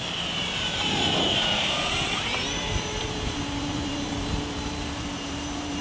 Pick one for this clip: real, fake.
fake